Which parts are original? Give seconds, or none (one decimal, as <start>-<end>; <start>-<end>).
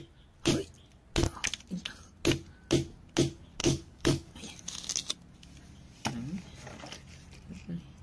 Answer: 0.0-3.6; 4.3-8.0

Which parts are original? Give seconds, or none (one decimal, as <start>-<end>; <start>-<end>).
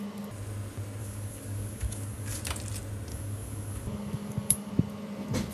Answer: 0.0-1.0; 2.4-3.1; 4.7-5.5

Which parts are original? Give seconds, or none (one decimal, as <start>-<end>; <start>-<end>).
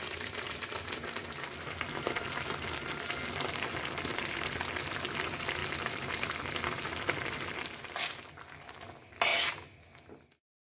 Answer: 0.0-10.7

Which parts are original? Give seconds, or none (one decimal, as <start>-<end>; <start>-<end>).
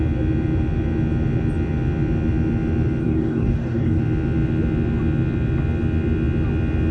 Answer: 0.0-3.0; 4.0-6.9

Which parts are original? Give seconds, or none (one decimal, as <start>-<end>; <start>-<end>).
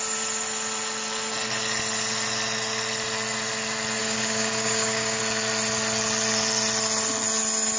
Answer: 0.0-4.0; 5.2-7.8